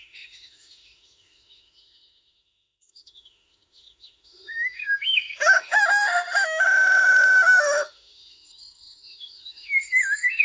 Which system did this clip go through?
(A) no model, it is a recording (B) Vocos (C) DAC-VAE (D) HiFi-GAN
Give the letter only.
C